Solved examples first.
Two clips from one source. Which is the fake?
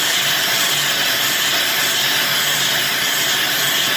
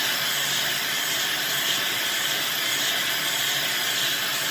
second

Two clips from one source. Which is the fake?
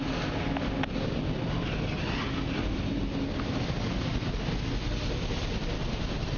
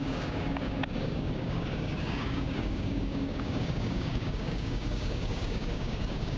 second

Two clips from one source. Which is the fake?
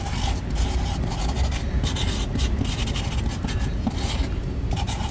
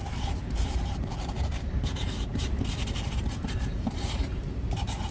second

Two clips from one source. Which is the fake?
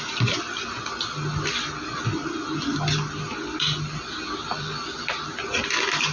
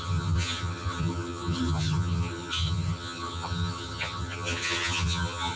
second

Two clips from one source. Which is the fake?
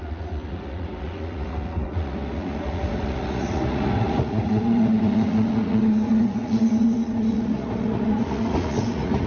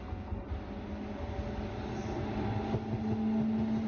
first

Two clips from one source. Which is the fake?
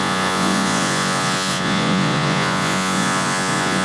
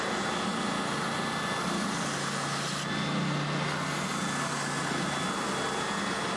first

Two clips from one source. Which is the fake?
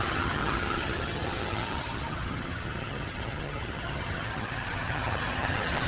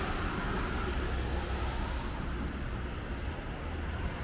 first